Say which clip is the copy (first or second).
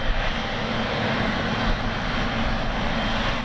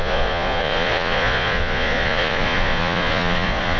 second